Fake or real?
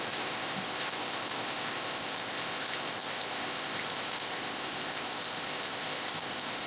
fake